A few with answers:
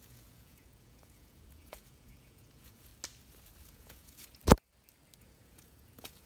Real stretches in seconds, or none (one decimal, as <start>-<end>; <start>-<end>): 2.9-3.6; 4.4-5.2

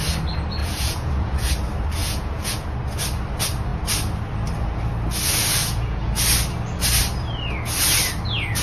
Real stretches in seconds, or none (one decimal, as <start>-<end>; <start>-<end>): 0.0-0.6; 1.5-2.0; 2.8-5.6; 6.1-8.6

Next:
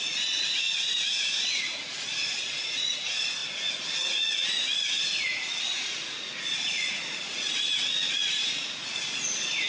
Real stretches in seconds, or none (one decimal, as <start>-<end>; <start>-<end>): none

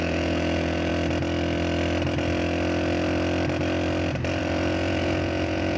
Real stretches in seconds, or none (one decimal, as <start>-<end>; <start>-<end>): 0.9-4.4

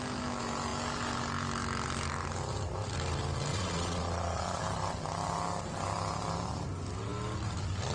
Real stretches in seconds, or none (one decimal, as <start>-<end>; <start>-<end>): 0.0-3.5; 4.6-7.9

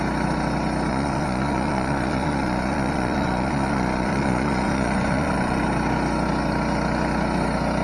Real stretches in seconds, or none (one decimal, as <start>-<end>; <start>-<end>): 0.0-0.9; 5.6-7.8

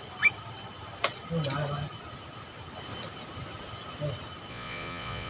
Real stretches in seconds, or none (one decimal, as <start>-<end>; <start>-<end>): 0.0-4.5